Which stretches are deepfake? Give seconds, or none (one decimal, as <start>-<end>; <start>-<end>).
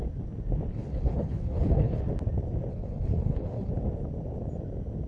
0.7-2.0; 2.7-3.7